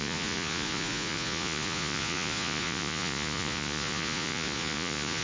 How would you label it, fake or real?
fake